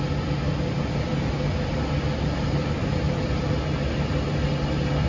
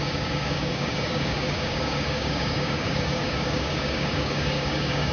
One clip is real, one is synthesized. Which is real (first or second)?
first